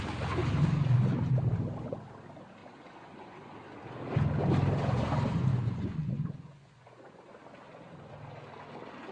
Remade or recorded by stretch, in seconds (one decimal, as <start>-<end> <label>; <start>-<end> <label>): 0.0-2.6 recorded; 2.6-3.8 remade; 3.8-5.5 recorded; 5.5-7.3 remade; 7.3-9.1 recorded